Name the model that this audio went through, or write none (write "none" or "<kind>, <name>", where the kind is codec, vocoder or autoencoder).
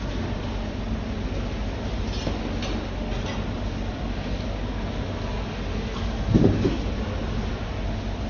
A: none